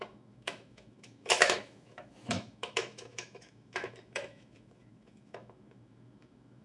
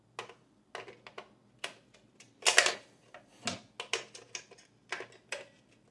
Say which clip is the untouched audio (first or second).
second